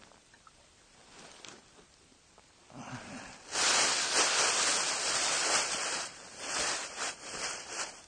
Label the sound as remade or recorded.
remade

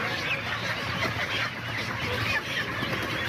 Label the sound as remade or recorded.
recorded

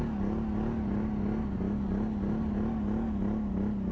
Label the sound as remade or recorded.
recorded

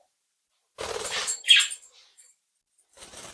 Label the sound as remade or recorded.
remade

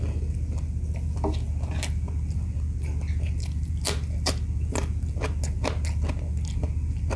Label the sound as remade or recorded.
recorded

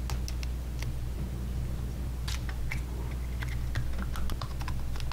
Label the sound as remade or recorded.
recorded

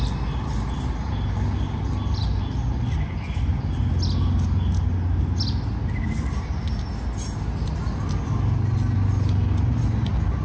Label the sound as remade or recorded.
recorded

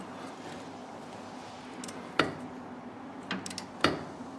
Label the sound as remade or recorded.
recorded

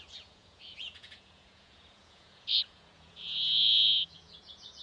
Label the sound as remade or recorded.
remade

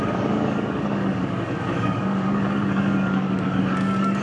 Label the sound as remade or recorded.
remade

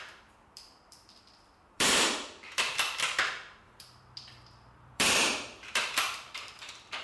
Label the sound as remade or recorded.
remade